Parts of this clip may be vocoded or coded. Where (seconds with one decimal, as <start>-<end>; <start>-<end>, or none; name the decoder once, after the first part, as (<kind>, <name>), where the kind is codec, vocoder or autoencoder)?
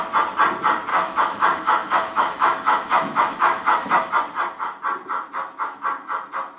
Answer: 0.9-4.1 (autoencoder, DAC-VAE)